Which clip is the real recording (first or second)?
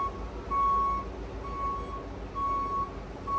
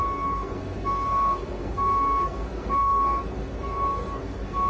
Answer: first